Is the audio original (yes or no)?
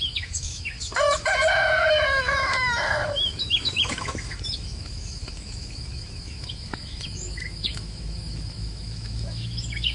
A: no